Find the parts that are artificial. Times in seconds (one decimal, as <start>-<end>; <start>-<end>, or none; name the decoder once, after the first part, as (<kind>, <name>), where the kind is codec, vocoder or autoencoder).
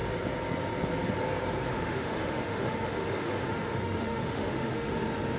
1.7-4.9 (autoencoder, DAC-VAE)